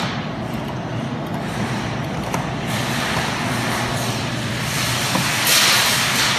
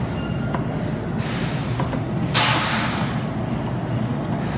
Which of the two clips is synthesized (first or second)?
first